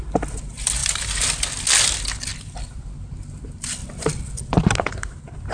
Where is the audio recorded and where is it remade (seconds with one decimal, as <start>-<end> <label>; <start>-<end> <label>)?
0.0-5.5 recorded